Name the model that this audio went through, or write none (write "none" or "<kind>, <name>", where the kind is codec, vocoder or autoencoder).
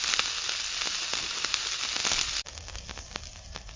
none